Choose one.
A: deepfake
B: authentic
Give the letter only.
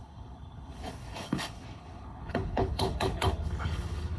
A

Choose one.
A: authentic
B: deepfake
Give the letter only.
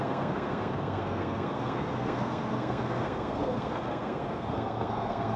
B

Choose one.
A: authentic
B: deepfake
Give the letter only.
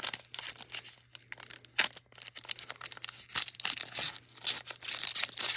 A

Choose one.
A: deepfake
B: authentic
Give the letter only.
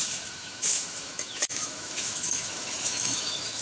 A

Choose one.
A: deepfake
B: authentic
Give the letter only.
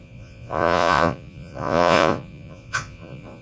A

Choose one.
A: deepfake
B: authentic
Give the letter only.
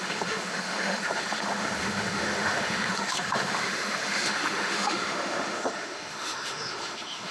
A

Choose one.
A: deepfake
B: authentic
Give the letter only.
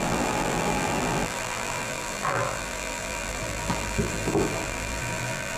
A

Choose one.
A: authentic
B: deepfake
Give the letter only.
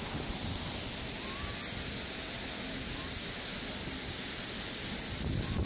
A